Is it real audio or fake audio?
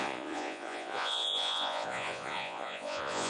fake